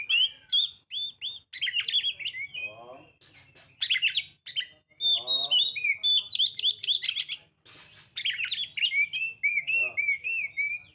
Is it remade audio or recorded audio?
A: recorded